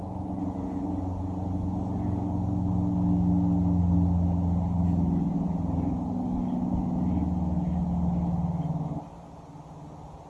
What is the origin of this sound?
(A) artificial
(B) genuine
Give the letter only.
B